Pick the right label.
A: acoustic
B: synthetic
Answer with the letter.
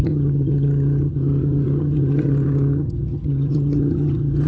B